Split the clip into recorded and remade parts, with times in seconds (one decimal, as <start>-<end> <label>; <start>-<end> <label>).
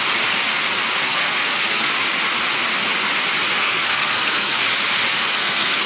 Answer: 0.0-1.0 recorded; 1.0-1.9 remade; 1.9-3.6 recorded; 3.6-4.6 remade; 4.6-5.1 recorded; 5.1-5.9 remade